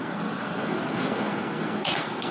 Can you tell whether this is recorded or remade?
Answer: remade